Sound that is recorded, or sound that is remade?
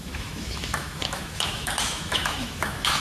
remade